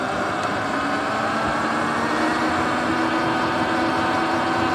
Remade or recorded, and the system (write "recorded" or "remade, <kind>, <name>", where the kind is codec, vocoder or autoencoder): recorded